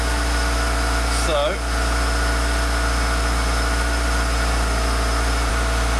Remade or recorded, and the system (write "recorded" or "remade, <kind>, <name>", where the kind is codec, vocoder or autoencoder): recorded